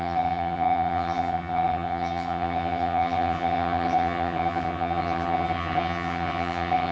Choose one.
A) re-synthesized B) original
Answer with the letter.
A